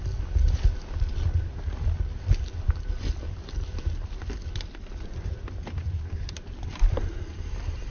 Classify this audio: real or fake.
real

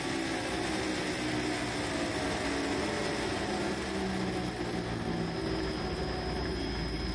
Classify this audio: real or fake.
real